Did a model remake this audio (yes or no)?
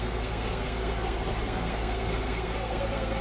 yes